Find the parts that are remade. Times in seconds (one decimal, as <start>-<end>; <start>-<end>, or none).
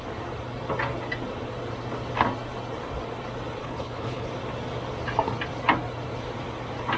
3.6-4.3